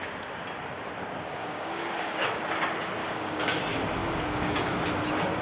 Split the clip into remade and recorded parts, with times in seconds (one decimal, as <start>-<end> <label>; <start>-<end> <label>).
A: 0.0-1.4 recorded; 1.4-2.4 remade; 2.4-3.0 recorded; 3.0-3.6 remade; 3.6-4.0 recorded; 4.0-4.8 remade; 4.8-5.4 recorded